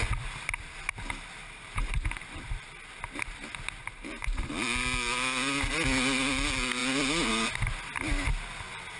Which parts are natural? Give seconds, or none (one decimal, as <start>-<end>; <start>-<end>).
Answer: 0.0-1.4; 2.4-3.8; 4.5-9.0